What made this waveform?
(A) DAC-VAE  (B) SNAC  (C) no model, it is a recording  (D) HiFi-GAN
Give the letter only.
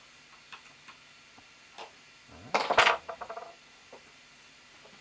C